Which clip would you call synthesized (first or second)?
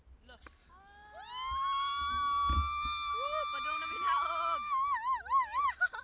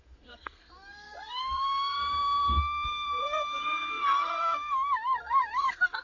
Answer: second